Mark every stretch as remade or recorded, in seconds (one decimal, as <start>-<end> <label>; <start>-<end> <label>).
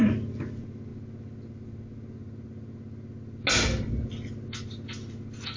0.0-5.6 recorded